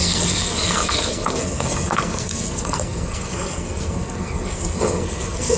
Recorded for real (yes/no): no